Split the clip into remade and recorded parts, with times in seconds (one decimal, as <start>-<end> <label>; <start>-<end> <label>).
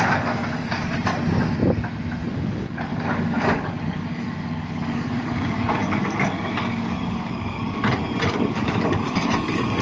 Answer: 0.0-0.8 remade; 0.8-2.3 recorded; 2.3-7.8 remade; 7.8-8.3 recorded; 8.3-9.8 remade